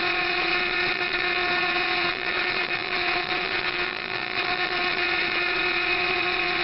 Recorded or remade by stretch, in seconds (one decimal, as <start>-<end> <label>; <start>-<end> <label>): 0.0-6.6 remade